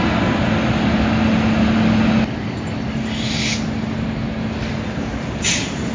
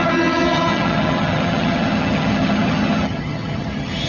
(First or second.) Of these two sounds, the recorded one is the first